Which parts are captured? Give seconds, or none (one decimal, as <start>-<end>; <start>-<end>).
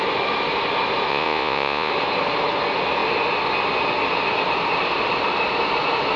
0.0-1.1; 1.9-6.2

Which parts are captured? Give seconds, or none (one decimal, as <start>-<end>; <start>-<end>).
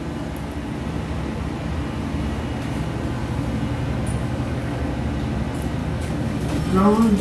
0.0-4.2; 4.9-5.8; 6.6-7.2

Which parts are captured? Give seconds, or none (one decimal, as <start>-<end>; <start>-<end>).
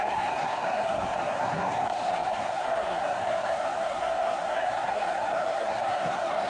none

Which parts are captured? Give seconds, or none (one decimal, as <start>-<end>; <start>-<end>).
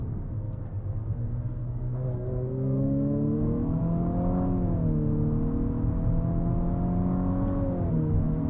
3.8-7.9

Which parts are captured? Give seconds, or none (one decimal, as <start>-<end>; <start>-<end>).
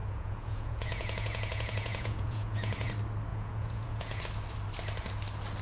2.9-3.3; 4.2-5.6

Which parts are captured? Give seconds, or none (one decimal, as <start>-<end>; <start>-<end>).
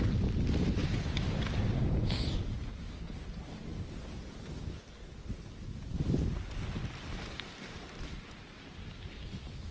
0.0-9.7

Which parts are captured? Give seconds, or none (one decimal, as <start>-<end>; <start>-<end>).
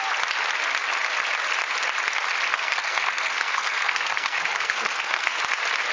0.0-2.5; 5.4-5.9